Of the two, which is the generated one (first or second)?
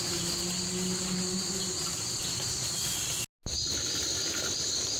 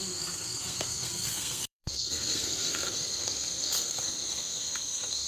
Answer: second